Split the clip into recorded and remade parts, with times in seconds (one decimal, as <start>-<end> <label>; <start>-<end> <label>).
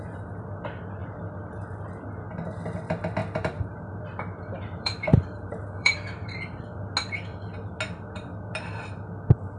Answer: 0.0-3.2 recorded; 3.2-6.6 remade; 6.6-9.6 recorded